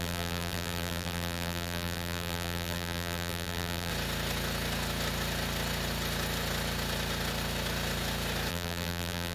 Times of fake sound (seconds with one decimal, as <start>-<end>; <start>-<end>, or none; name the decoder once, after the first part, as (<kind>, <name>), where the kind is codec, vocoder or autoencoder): 0.0-3.9 (vocoder, BigVGAN v2); 8.5-9.3